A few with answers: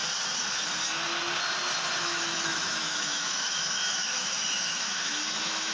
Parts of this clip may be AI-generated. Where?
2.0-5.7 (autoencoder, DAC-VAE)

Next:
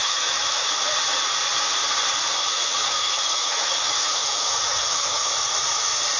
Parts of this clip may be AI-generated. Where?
0.0-0.7 (autoencoder, DAC-VAE); 2.4-5.3

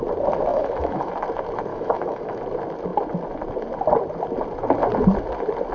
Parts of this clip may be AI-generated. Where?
0.5-1.1 (autoencoder, DAC-VAE); 1.7-2.4

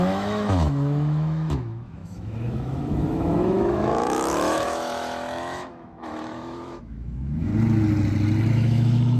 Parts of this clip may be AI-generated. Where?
0.0-7.5 (autoencoder, DAC-VAE); 8.5-9.2

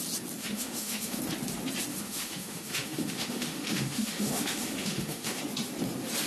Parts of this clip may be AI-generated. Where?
0.4-1.2 (autoencoder, DAC-VAE); 1.9-5.4

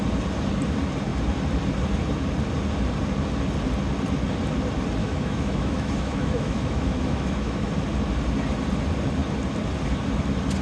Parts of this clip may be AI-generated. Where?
5.0-7.7 (autoencoder, DAC-VAE)

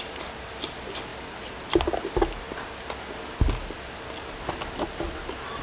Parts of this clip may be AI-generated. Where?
none

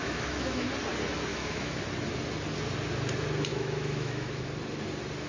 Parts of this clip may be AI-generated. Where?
0.0-0.7 (autoencoder, DAC-VAE); 1.3-1.8; 3.5-4.4